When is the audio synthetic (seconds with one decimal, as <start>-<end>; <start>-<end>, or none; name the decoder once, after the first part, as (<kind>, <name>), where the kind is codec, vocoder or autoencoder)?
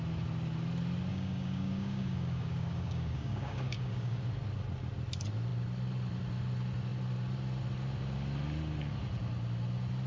1.1-4.2 (codec, DAC)